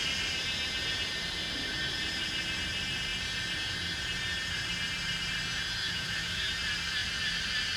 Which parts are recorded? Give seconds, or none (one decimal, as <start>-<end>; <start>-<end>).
0.0-5.8; 6.5-7.8